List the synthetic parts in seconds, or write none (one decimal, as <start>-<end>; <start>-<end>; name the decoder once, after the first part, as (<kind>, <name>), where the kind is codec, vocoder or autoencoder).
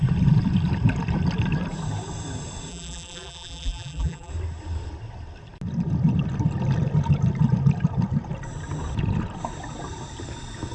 2.7-4.3 (vocoder, BigVGAN v2)